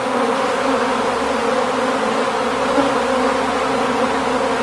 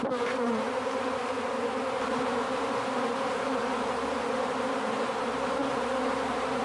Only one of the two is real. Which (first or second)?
first